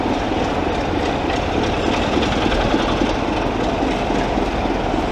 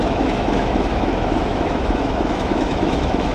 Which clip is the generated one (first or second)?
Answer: second